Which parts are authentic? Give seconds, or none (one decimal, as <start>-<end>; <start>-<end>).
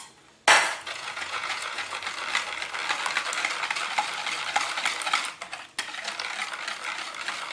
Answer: 0.0-0.7; 2.0-7.5